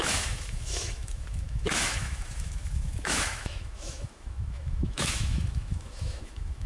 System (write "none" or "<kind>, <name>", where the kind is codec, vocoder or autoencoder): autoencoder, DAC-VAE